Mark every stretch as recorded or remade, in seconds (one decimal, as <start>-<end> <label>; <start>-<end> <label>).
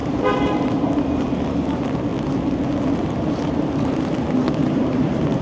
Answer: 0.0-0.9 remade; 0.9-4.6 recorded; 4.6-5.4 remade